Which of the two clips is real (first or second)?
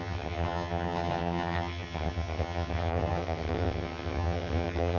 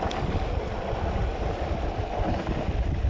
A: second